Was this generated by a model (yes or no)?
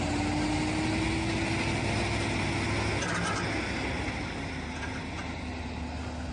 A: no